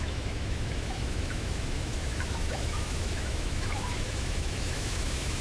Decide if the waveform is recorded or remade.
remade